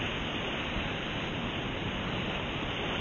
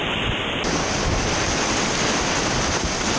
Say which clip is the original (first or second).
first